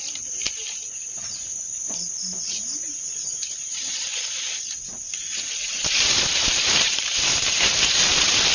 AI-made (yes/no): yes